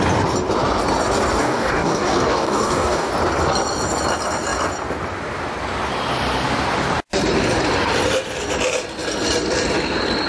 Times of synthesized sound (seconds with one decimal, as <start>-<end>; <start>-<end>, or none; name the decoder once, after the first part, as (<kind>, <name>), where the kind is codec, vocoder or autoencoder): 1.4-3.1 (codec, DAC)